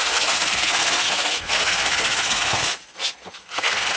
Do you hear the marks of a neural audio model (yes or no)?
yes